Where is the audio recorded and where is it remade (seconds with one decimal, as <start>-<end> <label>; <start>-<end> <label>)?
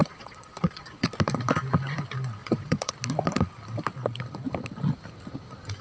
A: 0.0-1.1 remade; 1.1-2.4 recorded; 2.4-2.9 remade; 2.9-5.8 recorded